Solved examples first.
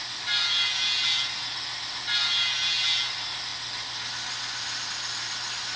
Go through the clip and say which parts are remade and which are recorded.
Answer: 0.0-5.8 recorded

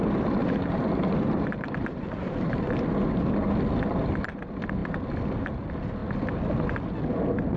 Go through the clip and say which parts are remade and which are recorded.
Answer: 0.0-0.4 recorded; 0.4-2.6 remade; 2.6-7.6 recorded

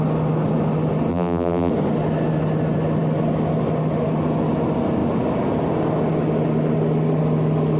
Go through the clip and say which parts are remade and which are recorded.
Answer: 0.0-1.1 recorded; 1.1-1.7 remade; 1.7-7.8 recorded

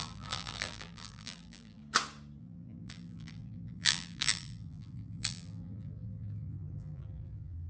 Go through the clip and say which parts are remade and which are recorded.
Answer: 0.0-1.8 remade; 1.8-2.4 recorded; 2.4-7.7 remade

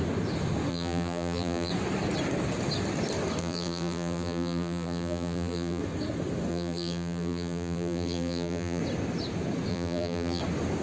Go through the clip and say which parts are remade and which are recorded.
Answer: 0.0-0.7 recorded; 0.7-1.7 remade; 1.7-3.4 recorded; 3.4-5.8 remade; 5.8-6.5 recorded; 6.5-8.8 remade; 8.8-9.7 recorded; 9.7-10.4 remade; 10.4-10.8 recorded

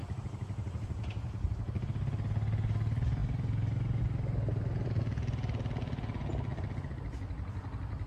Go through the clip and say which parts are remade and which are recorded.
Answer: 0.0-1.5 remade; 1.5-8.1 recorded